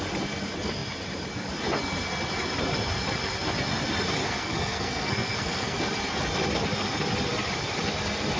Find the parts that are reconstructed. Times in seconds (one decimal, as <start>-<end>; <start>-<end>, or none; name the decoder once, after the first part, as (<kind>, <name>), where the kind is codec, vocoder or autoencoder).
4.2-5.8 (codec, SNAC)